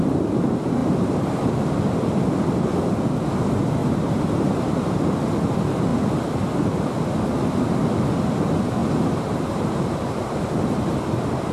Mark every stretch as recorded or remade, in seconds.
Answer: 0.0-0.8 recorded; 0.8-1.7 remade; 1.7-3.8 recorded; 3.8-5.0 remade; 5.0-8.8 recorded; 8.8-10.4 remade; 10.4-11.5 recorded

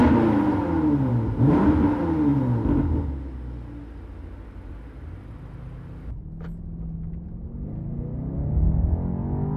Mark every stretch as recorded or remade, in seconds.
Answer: 0.0-9.6 recorded

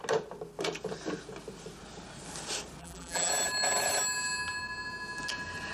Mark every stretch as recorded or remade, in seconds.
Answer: 0.0-2.8 recorded; 2.8-3.3 remade; 3.3-5.7 recorded

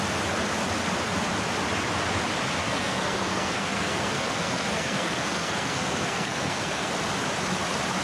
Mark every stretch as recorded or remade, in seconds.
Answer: 0.0-2.6 recorded; 2.6-6.9 remade; 6.9-8.0 recorded

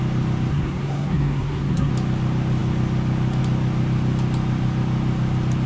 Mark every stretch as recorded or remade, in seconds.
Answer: 0.0-0.5 recorded; 0.5-1.9 remade; 1.9-5.7 recorded

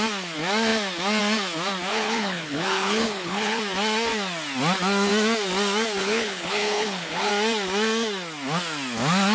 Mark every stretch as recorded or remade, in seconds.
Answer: 0.0-1.9 recorded; 1.9-3.6 remade; 3.6-6.0 recorded; 6.0-7.3 remade; 7.3-9.3 recorded